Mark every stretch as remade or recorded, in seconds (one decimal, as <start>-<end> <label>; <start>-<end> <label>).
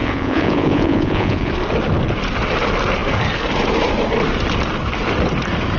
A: 0.0-1.5 remade; 1.5-5.8 recorded